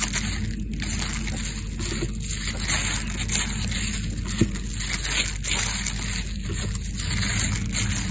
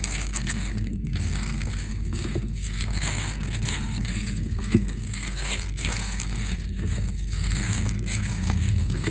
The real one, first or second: first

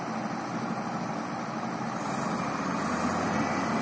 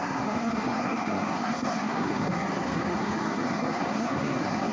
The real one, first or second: first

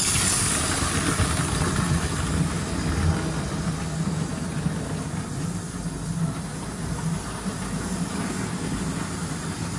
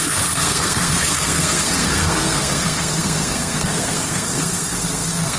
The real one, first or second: first